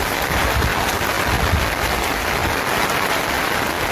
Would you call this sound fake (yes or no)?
no